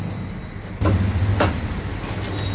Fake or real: real